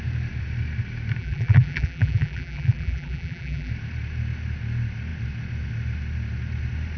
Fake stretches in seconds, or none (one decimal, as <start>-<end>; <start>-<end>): 1.2-3.7